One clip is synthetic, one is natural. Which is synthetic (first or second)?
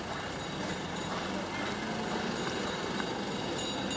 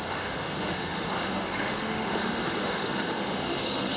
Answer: second